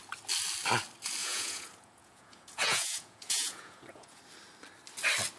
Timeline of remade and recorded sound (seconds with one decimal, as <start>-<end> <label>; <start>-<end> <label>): 0.0-1.2 recorded; 1.2-4.2 remade; 4.2-5.4 recorded